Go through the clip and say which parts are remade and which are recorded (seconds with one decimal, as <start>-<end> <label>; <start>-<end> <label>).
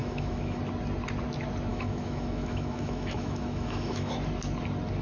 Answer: 0.0-0.6 remade; 0.6-1.7 recorded; 1.7-4.1 remade; 4.1-5.0 recorded